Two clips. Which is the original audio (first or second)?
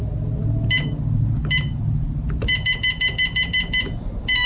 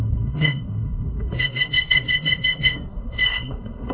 first